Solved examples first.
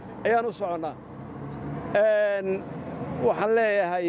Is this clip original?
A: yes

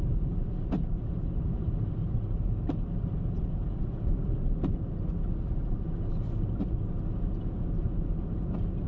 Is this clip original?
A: yes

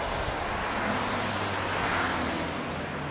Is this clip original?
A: yes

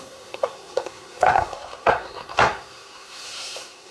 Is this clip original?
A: no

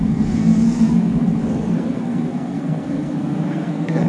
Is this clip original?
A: no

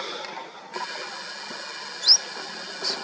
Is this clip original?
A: yes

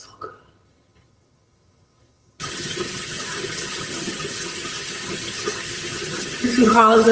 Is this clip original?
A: no